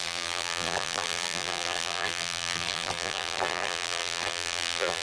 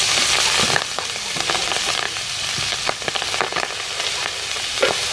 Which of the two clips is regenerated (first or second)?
first